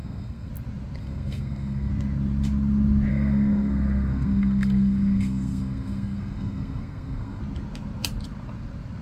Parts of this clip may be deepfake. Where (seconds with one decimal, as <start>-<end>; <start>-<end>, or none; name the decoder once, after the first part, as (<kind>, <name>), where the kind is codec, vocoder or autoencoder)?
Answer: 0.0-0.5 (codec, SNAC); 1.0-1.9; 3.1-7.4